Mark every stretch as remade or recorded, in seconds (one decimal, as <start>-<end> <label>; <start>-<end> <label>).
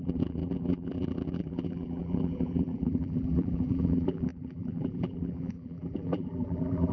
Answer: 0.0-6.9 remade